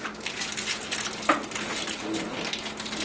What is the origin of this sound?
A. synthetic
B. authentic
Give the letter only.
B